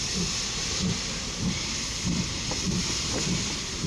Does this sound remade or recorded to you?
recorded